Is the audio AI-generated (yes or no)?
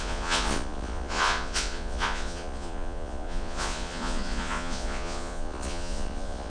yes